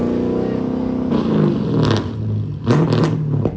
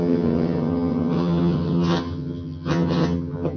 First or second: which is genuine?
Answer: first